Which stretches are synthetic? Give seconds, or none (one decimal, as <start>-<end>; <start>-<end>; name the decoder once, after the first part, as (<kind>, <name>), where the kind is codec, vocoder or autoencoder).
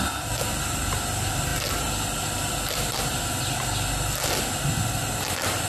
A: none